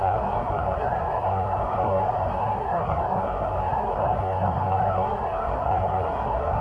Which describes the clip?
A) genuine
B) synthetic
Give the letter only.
B